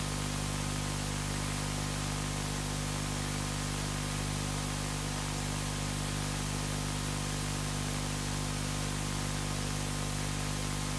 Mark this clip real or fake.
real